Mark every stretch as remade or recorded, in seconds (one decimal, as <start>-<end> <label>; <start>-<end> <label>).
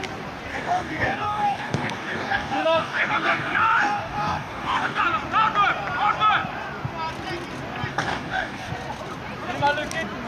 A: 0.0-0.5 recorded; 0.5-5.0 remade; 5.0-7.9 recorded; 7.9-8.7 remade; 8.7-10.3 recorded